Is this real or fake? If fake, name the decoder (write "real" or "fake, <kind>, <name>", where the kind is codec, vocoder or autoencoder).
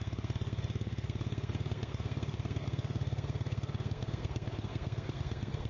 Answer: fake, codec, SNAC